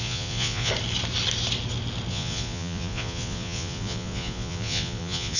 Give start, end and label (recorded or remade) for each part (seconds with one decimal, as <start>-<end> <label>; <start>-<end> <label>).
0.0-0.7 remade; 0.7-2.1 recorded; 2.1-5.4 remade